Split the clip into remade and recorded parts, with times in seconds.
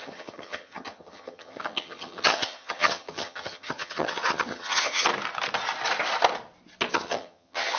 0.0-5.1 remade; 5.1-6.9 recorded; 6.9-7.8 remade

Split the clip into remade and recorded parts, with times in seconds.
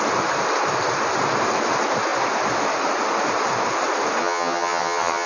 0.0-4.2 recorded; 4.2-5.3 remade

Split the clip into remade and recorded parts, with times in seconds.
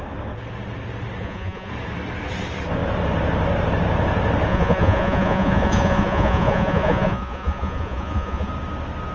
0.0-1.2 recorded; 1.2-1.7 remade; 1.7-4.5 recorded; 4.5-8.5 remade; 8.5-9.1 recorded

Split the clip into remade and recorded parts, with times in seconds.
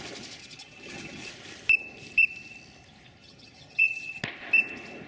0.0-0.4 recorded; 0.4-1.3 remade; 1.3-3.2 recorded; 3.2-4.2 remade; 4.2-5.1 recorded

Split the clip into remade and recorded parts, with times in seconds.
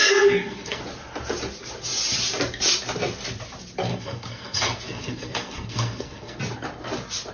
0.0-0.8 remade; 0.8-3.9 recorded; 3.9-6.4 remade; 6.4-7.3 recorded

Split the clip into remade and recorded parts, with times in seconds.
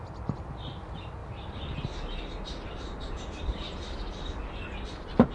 0.0-5.3 recorded